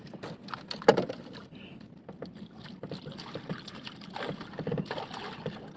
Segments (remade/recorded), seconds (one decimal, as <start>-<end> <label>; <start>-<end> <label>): 0.0-5.8 recorded